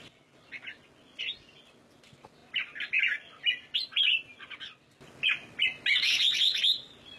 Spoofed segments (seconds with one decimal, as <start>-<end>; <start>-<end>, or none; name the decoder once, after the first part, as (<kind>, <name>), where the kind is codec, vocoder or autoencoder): none